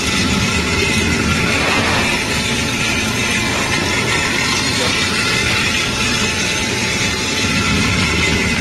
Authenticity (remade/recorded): recorded